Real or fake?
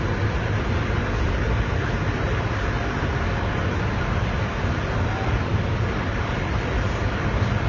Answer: real